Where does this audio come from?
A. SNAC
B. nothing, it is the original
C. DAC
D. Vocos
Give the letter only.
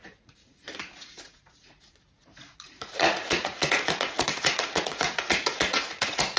D